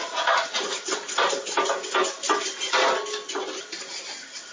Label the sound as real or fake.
real